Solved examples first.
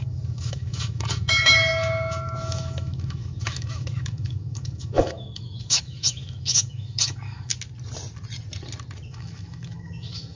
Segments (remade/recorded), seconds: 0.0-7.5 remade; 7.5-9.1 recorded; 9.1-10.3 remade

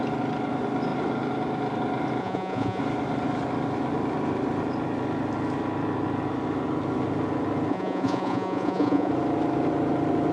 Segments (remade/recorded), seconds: 0.0-2.2 recorded; 2.2-2.8 remade; 2.8-7.7 recorded; 7.7-9.1 remade; 9.1-10.3 recorded

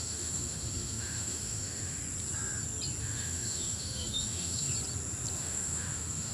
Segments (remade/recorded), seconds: 0.0-2.0 remade; 2.0-3.0 recorded; 3.0-4.7 remade; 4.7-5.4 recorded; 5.4-6.3 remade

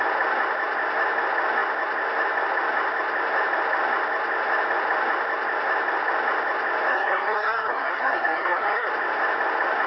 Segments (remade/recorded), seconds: 0.0-6.9 recorded; 6.9-8.9 remade; 8.9-9.9 recorded

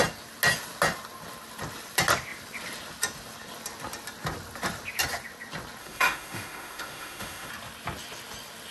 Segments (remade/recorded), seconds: 0.0-5.8 recorded; 5.8-7.5 remade; 7.5-8.7 recorded

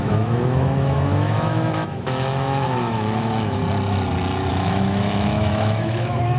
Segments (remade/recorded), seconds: 0.0-3.6 remade; 3.6-4.5 recorded; 4.5-6.4 remade

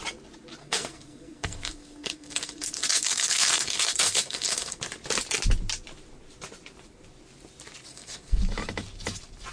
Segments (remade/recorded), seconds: 0.0-0.6 recorded; 0.6-4.8 remade; 4.8-7.9 recorded; 7.9-8.4 remade; 8.4-9.5 recorded

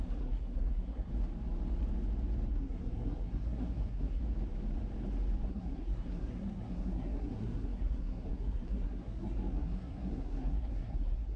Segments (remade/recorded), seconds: 0.0-1.1 remade; 1.1-2.5 recorded; 2.5-4.2 remade; 4.2-5.5 recorded; 5.5-11.4 remade